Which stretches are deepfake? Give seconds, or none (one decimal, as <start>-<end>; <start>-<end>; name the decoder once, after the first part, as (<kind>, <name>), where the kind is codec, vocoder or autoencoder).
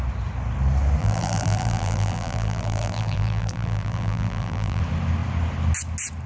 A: 1.0-4.8 (vocoder, BigVGAN v2)